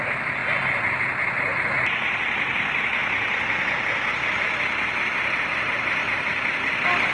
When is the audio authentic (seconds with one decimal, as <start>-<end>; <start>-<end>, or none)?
0.0-7.1